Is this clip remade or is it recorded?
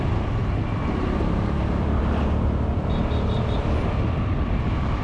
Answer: remade